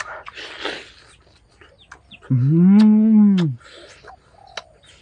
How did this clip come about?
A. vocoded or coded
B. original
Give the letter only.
B